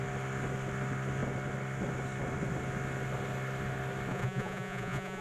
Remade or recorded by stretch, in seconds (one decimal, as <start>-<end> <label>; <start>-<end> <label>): 0.0-4.1 recorded; 4.1-5.2 remade